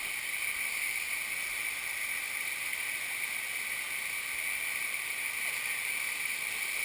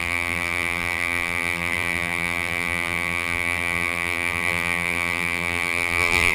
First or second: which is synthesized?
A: second